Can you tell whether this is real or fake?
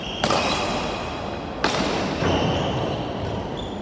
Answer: real